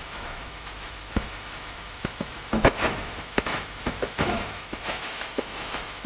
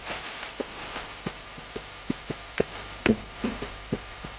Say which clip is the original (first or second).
second